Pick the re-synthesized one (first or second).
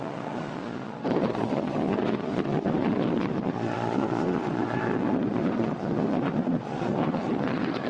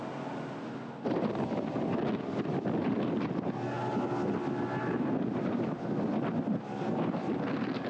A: first